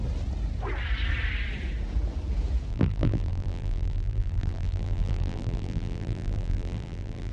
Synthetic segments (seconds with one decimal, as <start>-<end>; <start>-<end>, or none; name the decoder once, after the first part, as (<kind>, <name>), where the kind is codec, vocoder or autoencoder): 2.7-7.3 (vocoder, BigVGAN v2)